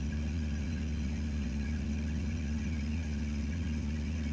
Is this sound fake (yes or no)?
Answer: yes